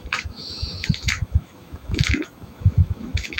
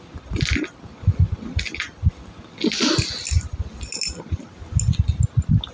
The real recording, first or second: second